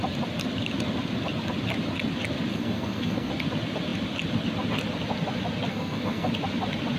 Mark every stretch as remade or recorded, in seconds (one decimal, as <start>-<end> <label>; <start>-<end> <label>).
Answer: 0.0-2.5 recorded; 2.5-3.3 remade; 3.3-5.7 recorded; 5.7-6.3 remade; 6.3-7.0 recorded